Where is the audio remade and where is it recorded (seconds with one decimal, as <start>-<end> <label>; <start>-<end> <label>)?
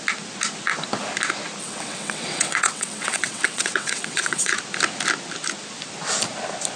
0.0-1.6 recorded; 1.6-4.5 remade; 4.5-6.8 recorded